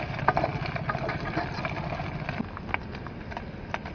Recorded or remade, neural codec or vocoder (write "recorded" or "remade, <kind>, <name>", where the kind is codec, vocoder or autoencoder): recorded